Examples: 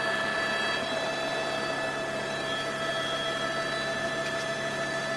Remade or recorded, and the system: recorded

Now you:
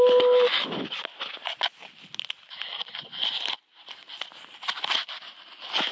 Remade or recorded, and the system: recorded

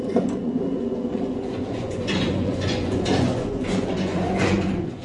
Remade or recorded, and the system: remade, vocoder, Vocos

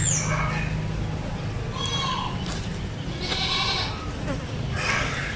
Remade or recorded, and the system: recorded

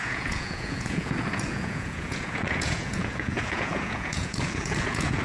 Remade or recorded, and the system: remade, vocoder, Vocos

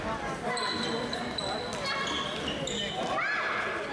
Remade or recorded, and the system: recorded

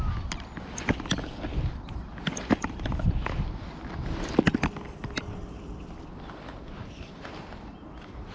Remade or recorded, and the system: recorded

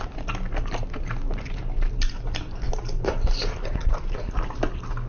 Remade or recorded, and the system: recorded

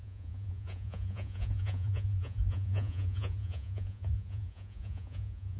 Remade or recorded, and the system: remade, vocoder, Vocos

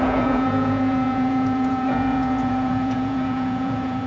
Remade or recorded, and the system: remade, vocoder, Vocos